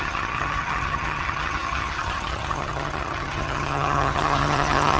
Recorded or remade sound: remade